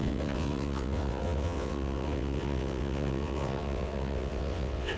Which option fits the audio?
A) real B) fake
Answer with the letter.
B